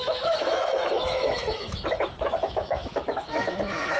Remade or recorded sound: remade